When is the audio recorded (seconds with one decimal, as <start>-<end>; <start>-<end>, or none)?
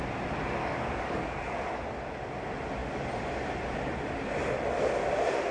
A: 0.0-0.6; 1.6-5.5